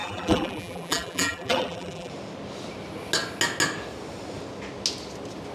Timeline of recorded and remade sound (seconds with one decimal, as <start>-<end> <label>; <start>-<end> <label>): 0.0-2.1 remade; 2.1-5.5 recorded